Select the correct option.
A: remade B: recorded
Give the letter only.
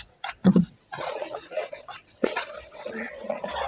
A